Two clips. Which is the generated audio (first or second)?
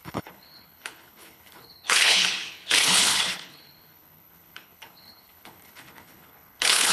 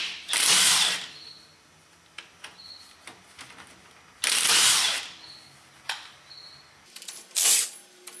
first